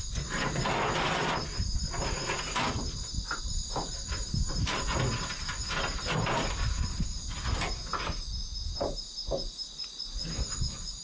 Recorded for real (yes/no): yes